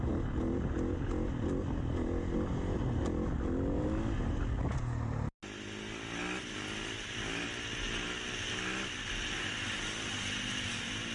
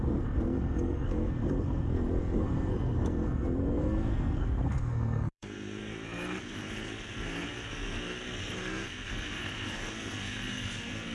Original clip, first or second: first